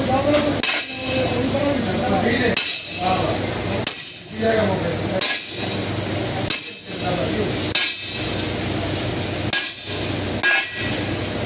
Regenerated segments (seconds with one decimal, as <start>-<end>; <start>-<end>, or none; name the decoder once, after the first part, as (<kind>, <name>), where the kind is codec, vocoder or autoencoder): 1.0-2.1 (vocoder, BigVGAN v2)